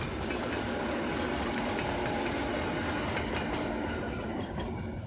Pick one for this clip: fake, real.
real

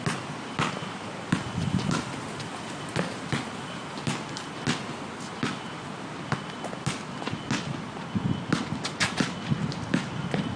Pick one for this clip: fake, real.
real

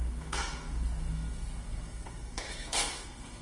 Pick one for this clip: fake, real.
fake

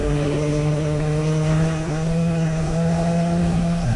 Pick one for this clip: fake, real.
fake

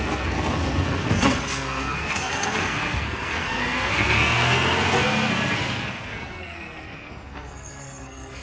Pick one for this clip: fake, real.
fake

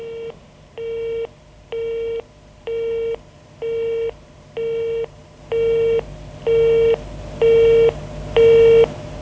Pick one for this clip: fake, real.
real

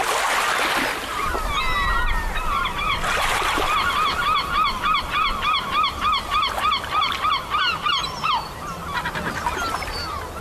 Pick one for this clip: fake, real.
real